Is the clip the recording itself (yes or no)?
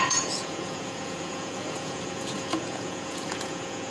no